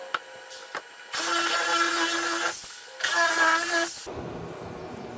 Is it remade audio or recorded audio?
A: recorded